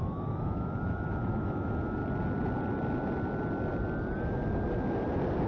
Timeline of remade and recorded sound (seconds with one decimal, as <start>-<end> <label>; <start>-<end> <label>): 0.0-2.0 remade; 2.0-5.5 recorded